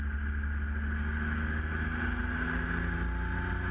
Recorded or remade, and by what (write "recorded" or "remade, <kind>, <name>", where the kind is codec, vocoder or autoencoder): recorded